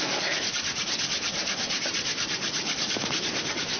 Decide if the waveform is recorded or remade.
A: recorded